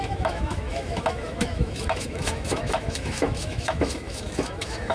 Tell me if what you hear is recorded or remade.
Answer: remade